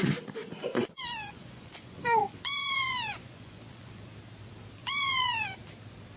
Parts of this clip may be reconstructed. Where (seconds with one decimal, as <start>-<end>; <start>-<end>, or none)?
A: 0.4-4.1; 4.8-5.6